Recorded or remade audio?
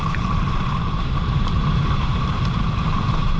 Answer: remade